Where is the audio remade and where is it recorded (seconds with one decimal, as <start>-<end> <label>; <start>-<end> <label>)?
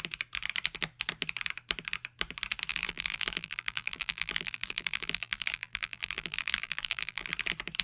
0.0-2.7 recorded; 2.7-7.3 remade; 7.3-7.8 recorded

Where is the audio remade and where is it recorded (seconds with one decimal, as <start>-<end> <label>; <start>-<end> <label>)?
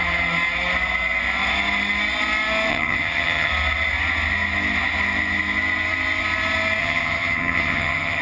0.0-2.7 recorded; 2.7-3.5 remade; 3.5-6.8 recorded; 6.8-8.2 remade